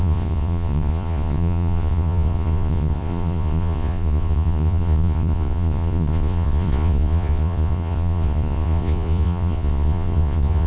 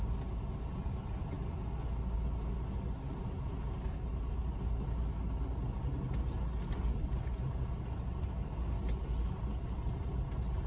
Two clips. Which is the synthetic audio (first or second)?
first